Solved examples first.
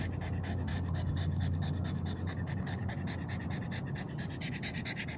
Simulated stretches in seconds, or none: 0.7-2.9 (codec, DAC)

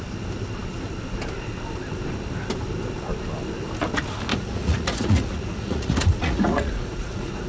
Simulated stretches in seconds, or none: 4.3-7.5 (vocoder, Vocos)

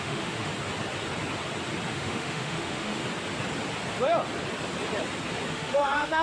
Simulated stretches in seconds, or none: 0.0-0.5 (autoencoder, DAC-VAE); 1.9-3.0; 5.5-6.2

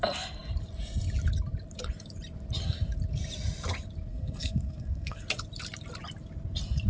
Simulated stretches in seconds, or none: 4.1-5.2 (codec, SNAC)